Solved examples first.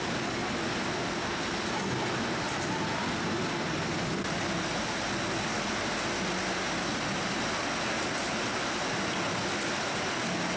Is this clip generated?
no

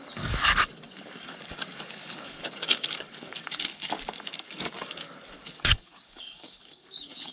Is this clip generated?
yes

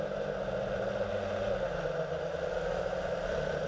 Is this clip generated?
no